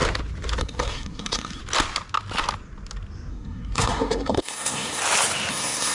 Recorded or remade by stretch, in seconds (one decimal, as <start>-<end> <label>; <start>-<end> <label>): 0.0-0.6 recorded; 0.6-1.6 remade; 1.6-3.3 recorded; 3.3-5.0 remade; 5.0-5.5 recorded; 5.5-5.9 remade

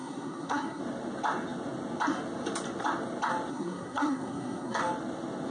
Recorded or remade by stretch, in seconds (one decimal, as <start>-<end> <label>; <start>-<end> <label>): 0.0-0.8 remade; 0.8-3.5 recorded; 3.5-4.8 remade; 4.8-5.5 recorded

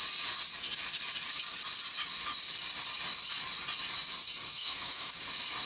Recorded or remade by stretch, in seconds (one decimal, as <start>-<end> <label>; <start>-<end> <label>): 0.0-4.5 recorded; 4.5-5.1 remade; 5.1-5.7 recorded

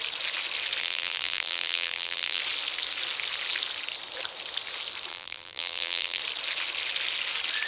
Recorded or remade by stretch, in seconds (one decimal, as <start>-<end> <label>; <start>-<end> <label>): 0.0-0.8 recorded; 0.8-2.4 remade; 2.4-5.1 recorded; 5.1-6.2 remade; 6.2-7.7 recorded

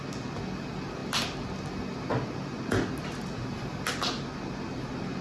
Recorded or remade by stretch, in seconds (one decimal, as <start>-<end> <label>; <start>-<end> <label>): 0.0-5.2 recorded

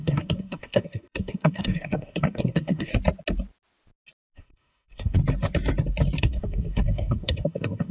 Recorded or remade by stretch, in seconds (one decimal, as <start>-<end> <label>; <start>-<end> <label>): 0.0-2.9 remade; 2.9-4.2 recorded; 4.2-5.2 remade; 5.2-6.2 recorded; 6.2-7.9 remade

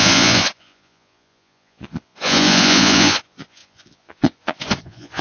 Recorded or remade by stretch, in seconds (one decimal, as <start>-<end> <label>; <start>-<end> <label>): 0.0-5.2 remade